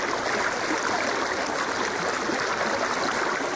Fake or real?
real